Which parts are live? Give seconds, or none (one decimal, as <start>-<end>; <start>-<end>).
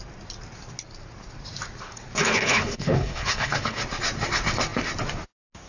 0.0-2.2; 3.8-5.7